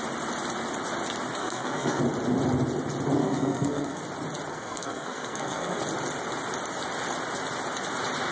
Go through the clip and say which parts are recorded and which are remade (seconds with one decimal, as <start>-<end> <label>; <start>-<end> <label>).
0.0-1.4 recorded; 1.4-2.0 remade; 2.0-3.2 recorded; 3.2-4.0 remade; 4.0-4.5 recorded; 4.5-5.8 remade; 5.8-8.3 recorded